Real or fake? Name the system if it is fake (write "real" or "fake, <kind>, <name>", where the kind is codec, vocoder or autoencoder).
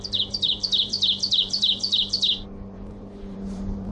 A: fake, vocoder, BigVGAN v2